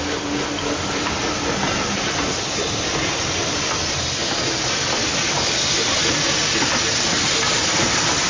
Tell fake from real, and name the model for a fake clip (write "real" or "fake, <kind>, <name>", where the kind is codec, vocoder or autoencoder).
real